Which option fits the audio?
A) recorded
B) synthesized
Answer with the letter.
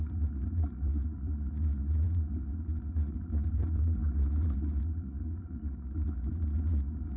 B